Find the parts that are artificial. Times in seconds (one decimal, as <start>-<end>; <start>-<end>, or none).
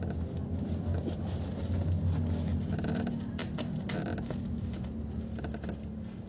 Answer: 2.5-3.7